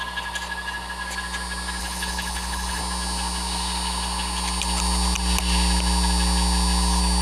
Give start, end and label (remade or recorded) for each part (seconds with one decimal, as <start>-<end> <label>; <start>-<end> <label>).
0.0-1.8 recorded; 1.8-2.8 remade; 2.8-7.2 recorded